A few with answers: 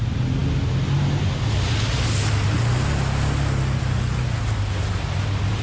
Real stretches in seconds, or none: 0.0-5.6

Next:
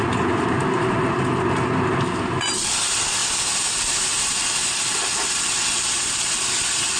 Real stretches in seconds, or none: 0.0-7.0

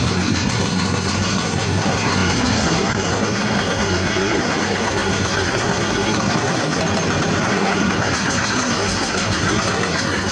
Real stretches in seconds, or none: 6.8-7.4

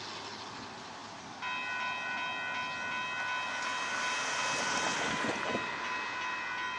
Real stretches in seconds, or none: 0.0-6.8

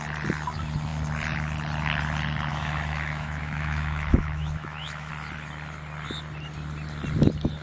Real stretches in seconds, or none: 0.0-2.5; 5.1-7.6

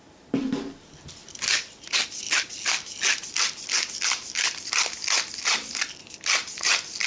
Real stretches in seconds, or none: 0.0-7.1

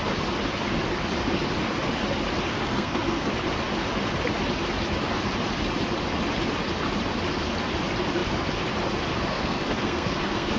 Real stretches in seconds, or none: 0.0-2.5; 3.3-9.3